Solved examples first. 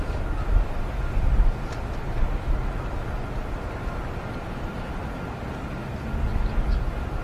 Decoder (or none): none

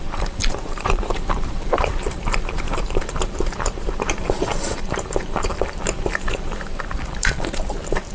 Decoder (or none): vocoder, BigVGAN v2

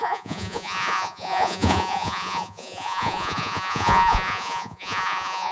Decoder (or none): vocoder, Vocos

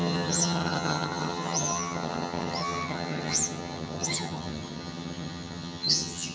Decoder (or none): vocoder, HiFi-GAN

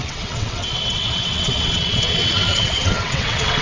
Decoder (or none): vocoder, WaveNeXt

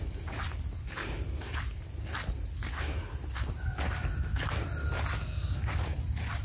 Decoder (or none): none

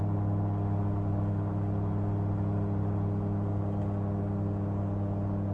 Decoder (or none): none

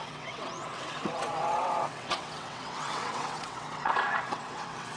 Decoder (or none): vocoder, WaveNeXt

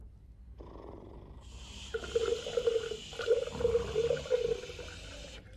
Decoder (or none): none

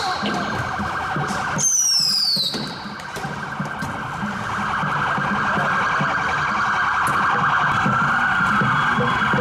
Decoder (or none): none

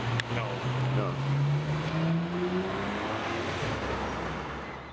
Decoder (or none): none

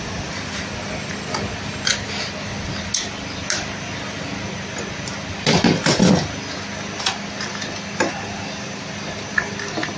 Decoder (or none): none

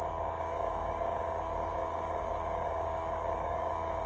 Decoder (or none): codec, DAC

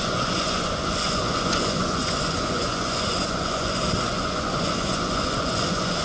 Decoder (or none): vocoder, Vocos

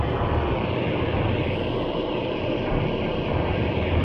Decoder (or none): vocoder, BigVGAN v2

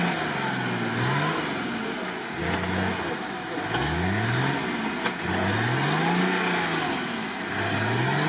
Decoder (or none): none